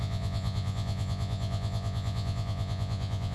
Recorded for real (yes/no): no